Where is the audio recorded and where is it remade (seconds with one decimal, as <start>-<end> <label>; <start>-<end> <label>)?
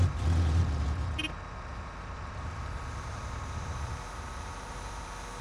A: 0.0-1.7 recorded; 1.7-4.9 remade; 4.9-5.4 recorded